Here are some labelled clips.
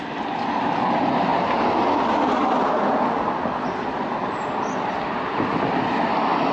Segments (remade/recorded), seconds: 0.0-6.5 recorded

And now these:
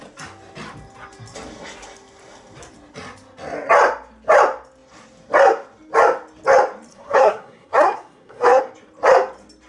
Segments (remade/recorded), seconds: 0.0-6.9 recorded; 6.9-8.6 remade; 8.6-9.7 recorded

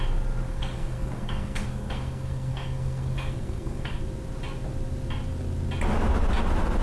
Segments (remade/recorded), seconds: 0.0-0.5 recorded; 0.5-4.0 remade; 4.0-6.8 recorded

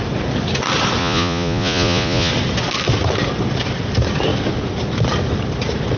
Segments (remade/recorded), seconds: 0.0-1.0 recorded; 1.0-2.3 remade; 2.3-6.0 recorded

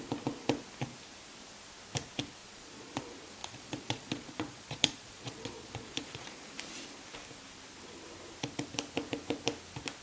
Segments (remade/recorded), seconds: 0.0-2.4 recorded; 2.4-3.0 remade; 3.0-3.4 recorded; 3.4-6.5 remade; 6.5-10.0 recorded